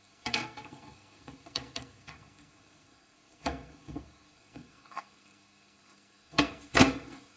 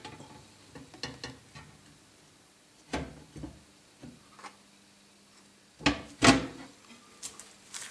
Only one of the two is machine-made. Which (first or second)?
first